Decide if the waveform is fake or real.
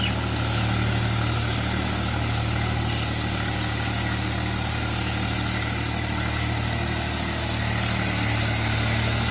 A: real